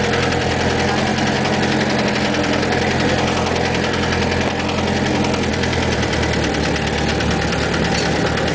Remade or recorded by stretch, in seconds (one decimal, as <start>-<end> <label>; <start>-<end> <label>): 0.0-5.5 recorded; 5.5-6.5 remade; 6.5-7.1 recorded; 7.1-7.9 remade; 7.9-8.5 recorded

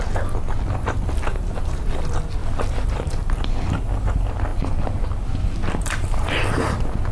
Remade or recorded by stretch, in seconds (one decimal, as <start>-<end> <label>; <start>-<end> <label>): 0.0-1.3 recorded; 1.3-1.8 remade; 1.8-2.4 recorded; 2.4-3.4 remade; 3.4-5.6 recorded; 5.6-7.1 remade

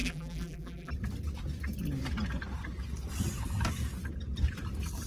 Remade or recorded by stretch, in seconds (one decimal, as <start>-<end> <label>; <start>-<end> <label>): 0.0-0.9 remade; 0.9-5.1 recorded